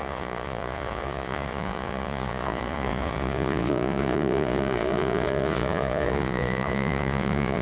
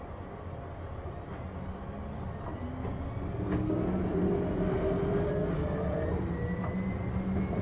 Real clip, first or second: second